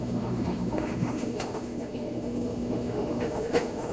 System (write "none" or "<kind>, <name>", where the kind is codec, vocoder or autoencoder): autoencoder, DAC-VAE